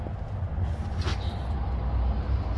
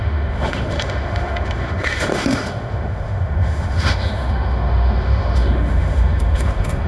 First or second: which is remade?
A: second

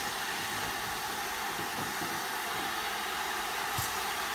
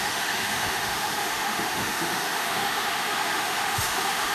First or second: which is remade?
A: second